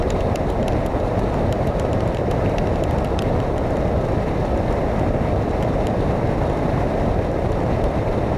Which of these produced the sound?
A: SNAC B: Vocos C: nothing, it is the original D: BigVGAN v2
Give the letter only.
C